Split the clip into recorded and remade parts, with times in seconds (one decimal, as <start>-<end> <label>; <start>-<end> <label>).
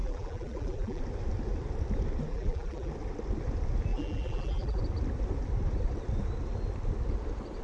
0.0-1.0 remade; 1.0-2.3 recorded; 2.3-2.9 remade; 2.9-3.9 recorded; 3.9-4.8 remade; 4.8-7.6 recorded